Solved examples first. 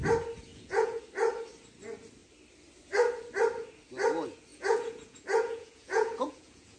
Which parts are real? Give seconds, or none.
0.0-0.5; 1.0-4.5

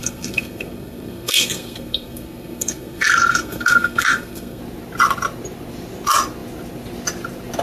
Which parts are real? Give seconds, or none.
4.6-7.6

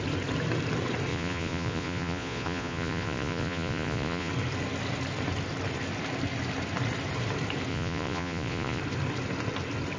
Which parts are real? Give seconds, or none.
0.0-1.1; 4.3-7.7; 8.8-10.0

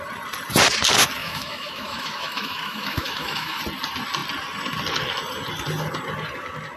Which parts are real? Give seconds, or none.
0.0-1.2; 3.6-6.8

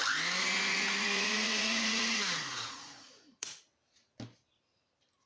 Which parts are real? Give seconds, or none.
0.0-0.4; 3.6-5.3